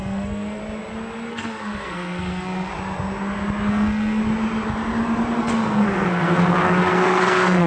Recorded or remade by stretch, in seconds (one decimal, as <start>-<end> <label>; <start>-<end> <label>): 0.0-0.6 remade; 0.6-1.3 recorded; 1.3-2.7 remade; 2.7-3.7 recorded; 3.7-4.2 remade; 4.2-5.4 recorded; 5.4-7.7 remade